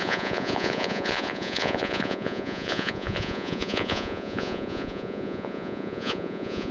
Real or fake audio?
fake